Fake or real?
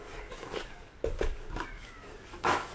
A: fake